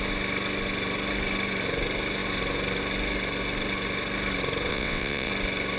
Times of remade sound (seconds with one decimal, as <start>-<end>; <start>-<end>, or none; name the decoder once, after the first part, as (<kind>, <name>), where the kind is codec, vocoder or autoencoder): 4.7-5.3 (vocoder, WaveNeXt)